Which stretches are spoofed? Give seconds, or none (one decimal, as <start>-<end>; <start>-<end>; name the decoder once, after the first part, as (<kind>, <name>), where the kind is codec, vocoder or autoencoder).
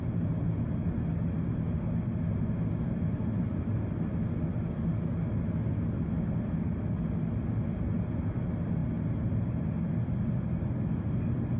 none